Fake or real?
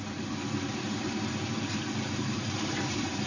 fake